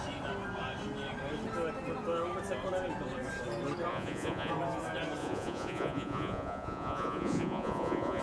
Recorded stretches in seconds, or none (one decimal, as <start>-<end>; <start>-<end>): 0.0-3.9; 4.5-5.2